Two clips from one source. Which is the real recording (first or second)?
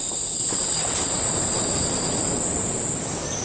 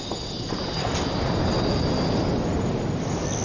second